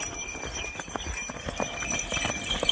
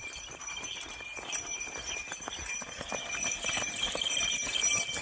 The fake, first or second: second